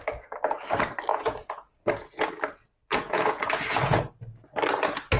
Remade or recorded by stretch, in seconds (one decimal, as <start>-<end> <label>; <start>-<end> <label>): 0.0-1.1 recorded; 1.1-2.3 remade; 2.3-2.9 recorded; 2.9-4.1 remade; 4.1-5.2 recorded